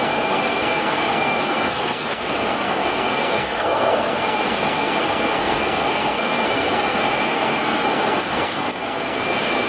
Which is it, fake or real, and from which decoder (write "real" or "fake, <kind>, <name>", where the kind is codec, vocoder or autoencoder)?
fake, codec, SNAC